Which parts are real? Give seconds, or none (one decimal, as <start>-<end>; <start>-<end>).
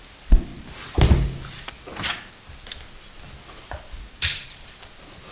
0.0-5.3